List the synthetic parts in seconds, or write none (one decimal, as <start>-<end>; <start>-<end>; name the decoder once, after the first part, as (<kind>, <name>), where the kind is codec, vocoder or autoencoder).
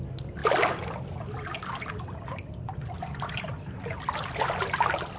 none